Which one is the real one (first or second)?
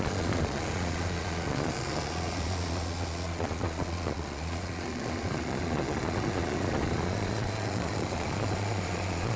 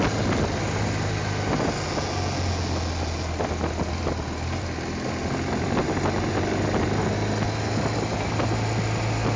second